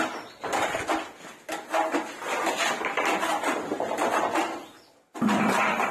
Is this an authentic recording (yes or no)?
yes